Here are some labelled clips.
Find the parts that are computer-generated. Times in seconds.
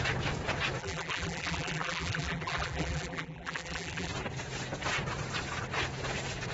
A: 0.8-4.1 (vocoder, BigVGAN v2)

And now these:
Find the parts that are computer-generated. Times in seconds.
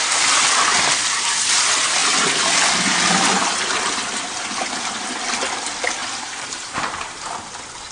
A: 6.0-7.1 (vocoder, BigVGAN v2)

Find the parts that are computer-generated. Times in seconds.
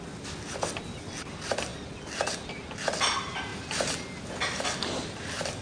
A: none